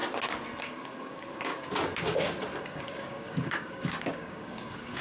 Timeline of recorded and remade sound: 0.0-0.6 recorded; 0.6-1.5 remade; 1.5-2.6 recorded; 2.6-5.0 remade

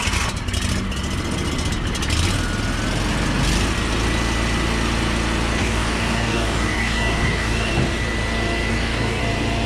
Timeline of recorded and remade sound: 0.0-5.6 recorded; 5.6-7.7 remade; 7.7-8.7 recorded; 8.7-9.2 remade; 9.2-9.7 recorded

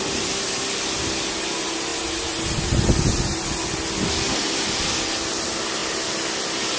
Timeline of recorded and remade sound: 0.0-6.8 recorded

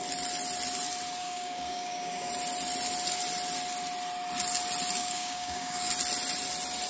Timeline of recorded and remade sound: 0.0-1.2 recorded; 1.2-2.3 remade; 2.3-5.0 recorded; 5.0-5.9 remade; 5.9-6.9 recorded

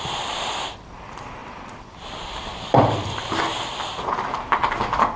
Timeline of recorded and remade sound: 0.0-5.2 recorded